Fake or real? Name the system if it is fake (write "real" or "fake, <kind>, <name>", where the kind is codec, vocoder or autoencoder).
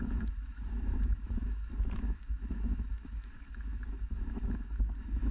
fake, autoencoder, DAC-VAE